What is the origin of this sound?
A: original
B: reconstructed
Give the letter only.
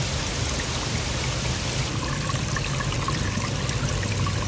A